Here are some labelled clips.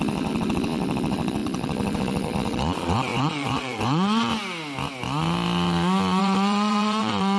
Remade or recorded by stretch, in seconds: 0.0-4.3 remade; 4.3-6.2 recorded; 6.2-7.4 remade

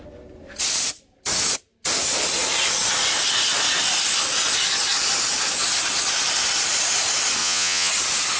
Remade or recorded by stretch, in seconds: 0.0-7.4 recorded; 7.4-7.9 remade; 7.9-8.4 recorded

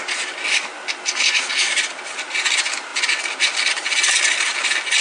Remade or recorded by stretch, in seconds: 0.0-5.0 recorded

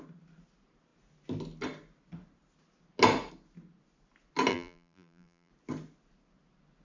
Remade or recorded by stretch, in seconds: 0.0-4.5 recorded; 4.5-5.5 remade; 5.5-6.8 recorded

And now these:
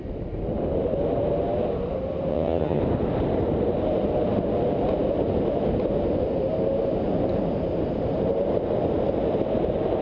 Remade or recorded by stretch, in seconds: 0.0-2.3 recorded; 2.3-2.8 remade; 2.8-10.0 recorded